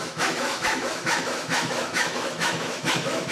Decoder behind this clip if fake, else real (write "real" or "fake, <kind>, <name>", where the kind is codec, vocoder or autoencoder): fake, autoencoder, DAC-VAE